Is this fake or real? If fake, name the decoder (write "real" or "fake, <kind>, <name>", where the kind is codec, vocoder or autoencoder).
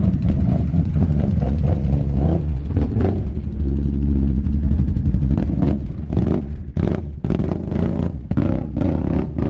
fake, vocoder, Vocos